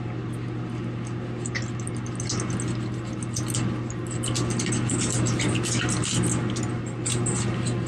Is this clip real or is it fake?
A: real